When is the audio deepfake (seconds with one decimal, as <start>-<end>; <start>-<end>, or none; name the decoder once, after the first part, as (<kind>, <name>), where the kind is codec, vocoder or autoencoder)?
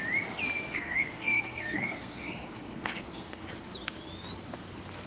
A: 0.7-3.5 (codec, SNAC)